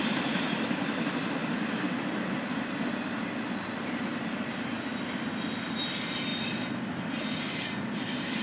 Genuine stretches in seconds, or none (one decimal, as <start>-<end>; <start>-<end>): 0.0-1.4; 2.2-6.3; 7.7-8.4